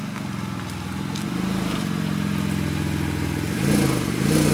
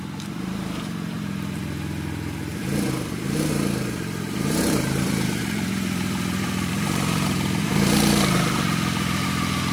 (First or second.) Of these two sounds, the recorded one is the first